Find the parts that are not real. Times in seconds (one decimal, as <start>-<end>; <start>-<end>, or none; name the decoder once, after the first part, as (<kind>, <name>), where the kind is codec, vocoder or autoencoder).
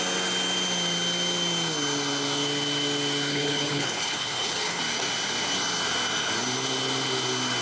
3.3-4.8 (codec, HILCodec)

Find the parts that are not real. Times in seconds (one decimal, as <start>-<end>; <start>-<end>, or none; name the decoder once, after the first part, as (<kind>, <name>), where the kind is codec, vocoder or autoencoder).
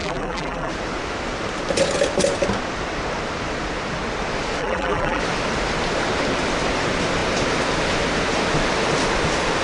0.0-0.7 (vocoder, BigVGAN v2); 4.6-5.2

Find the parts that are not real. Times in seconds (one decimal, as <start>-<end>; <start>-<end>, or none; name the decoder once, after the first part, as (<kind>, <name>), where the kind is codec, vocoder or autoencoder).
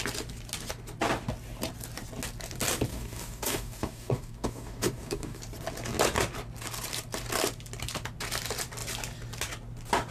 2.9-5.4 (codec, DAC)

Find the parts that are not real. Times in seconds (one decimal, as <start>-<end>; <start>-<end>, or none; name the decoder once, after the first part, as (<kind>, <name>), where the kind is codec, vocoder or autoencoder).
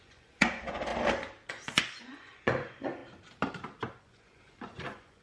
0.0-0.9 (vocoder, Vocos); 1.5-3.0; 4.0-5.2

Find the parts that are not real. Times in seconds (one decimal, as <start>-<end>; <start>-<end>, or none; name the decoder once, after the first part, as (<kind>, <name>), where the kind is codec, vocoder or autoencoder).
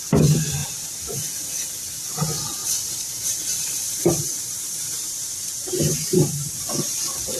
0.6-1.3 (vocoder, BigVGAN v2); 2.6-6.5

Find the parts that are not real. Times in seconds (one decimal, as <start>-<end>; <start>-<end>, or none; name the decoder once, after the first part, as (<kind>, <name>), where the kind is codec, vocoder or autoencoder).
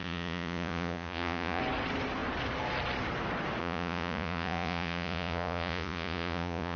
0.0-1.6 (vocoder, Vocos); 3.6-6.8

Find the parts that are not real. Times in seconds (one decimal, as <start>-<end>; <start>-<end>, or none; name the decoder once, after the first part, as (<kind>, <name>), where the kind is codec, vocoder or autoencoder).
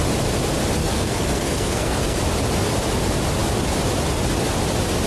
0.8-2.2 (codec, SNAC)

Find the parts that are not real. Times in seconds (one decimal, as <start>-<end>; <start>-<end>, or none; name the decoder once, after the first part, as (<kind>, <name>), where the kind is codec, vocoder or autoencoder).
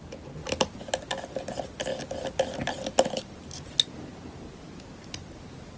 none